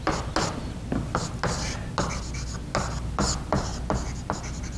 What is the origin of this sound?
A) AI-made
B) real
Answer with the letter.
B